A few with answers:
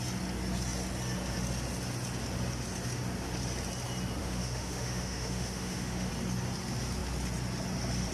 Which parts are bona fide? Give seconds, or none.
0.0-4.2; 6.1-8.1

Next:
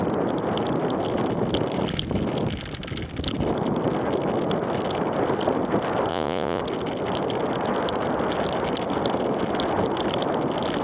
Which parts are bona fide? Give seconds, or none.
0.0-6.1; 6.6-10.8